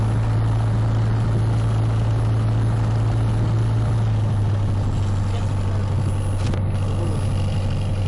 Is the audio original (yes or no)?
yes